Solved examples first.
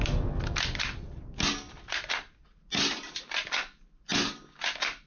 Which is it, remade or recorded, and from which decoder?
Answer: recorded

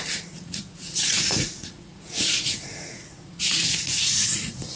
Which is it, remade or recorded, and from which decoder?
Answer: remade, vocoder, Vocos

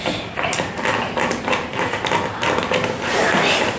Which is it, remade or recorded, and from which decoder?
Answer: recorded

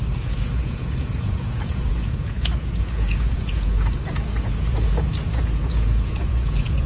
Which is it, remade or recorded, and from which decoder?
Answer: remade, vocoder, Vocos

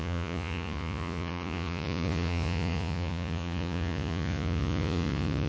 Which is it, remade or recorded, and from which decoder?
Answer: remade, vocoder, Vocos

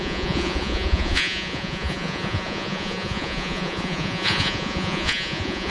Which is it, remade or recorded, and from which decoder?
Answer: remade, vocoder, Vocos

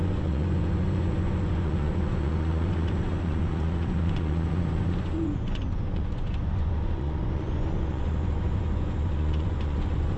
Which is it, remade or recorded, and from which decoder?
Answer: remade, vocoder, Vocos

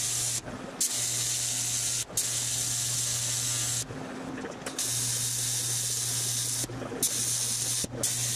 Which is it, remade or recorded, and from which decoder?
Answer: recorded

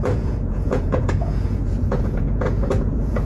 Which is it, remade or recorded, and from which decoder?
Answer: remade, vocoder, Vocos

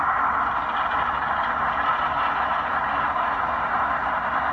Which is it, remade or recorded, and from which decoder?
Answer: recorded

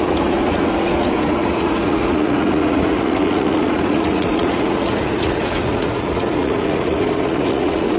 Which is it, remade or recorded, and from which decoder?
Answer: remade, vocoder, Vocos